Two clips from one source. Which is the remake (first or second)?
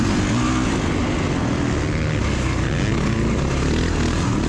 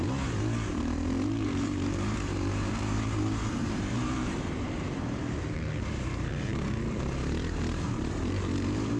second